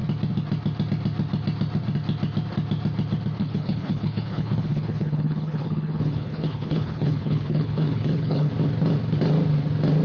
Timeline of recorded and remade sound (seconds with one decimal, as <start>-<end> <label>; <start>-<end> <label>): 0.0-3.4 recorded; 3.4-8.5 remade; 8.5-10.0 recorded